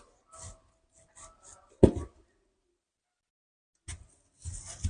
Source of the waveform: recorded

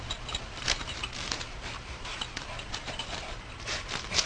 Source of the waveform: remade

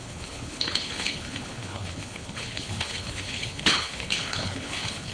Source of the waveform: remade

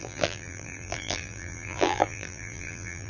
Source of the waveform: remade